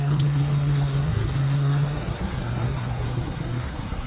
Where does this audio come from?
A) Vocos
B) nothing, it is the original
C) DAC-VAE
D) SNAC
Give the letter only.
D